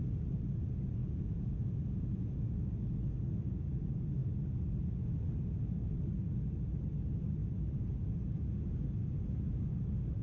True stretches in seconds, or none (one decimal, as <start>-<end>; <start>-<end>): 0.0-1.0; 2.3-10.2